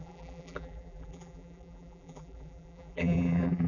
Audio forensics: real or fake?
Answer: fake